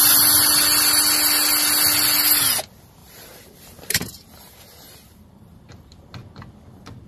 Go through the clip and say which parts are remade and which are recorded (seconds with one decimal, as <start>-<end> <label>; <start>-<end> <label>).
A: 0.0-3.0 recorded; 3.0-5.7 remade; 5.7-7.1 recorded